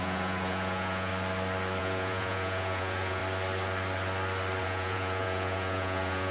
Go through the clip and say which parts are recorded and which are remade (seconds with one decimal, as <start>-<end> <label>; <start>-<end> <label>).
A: 0.0-1.1 remade; 1.1-1.8 recorded; 1.8-3.2 remade; 3.2-4.6 recorded; 4.6-6.3 remade